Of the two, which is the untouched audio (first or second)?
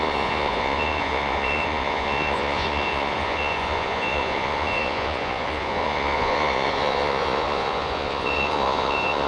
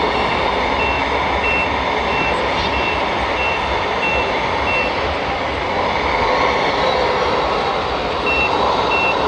second